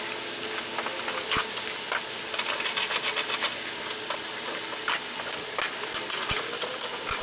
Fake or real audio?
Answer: real